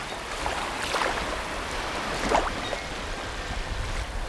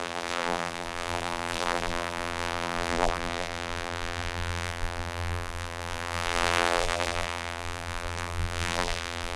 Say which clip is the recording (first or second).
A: first